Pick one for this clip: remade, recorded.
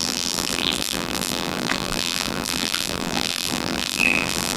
remade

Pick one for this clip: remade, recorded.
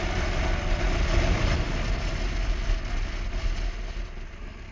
recorded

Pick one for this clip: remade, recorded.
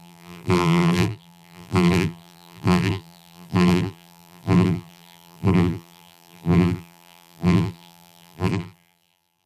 remade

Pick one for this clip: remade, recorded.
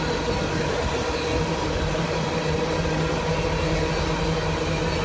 recorded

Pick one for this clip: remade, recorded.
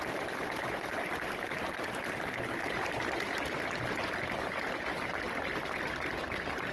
recorded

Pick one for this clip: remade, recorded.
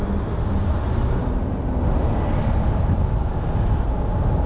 recorded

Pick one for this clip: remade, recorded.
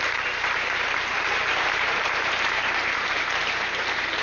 remade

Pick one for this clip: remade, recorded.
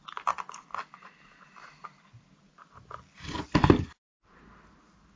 recorded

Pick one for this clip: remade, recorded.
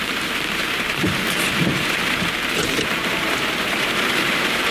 remade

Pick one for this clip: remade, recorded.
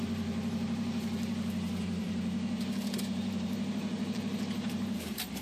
remade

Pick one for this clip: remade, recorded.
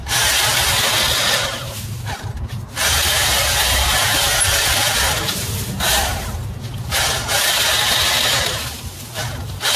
recorded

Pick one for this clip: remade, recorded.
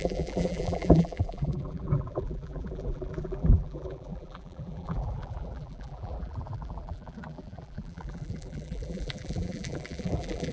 remade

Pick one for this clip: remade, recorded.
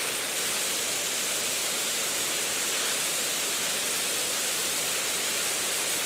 recorded